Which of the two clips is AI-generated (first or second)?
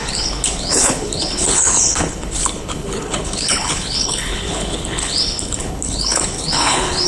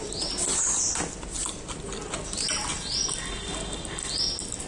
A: first